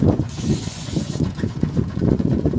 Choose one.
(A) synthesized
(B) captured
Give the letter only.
A